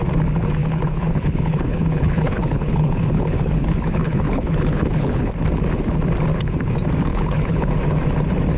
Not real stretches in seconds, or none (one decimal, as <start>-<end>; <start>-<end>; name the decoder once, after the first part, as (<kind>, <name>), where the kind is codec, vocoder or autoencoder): 0.6-5.3 (codec, HILCodec); 7.1-7.7